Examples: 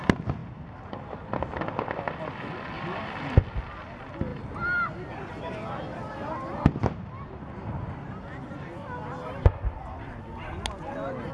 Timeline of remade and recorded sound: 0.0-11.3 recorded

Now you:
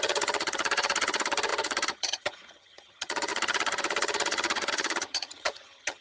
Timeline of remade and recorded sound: 0.0-6.0 remade